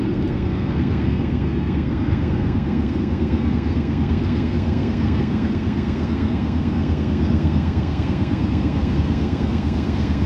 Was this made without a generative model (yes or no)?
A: no